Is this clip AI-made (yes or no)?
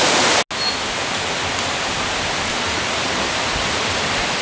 no